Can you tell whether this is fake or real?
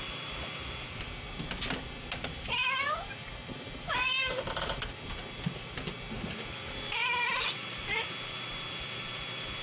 real